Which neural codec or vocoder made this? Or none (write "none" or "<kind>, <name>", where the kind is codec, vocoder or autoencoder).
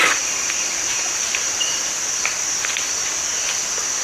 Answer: none